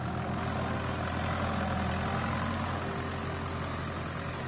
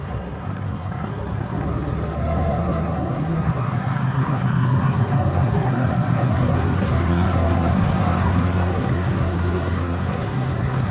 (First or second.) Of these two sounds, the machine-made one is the second